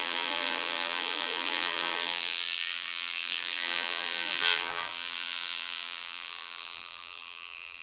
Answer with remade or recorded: remade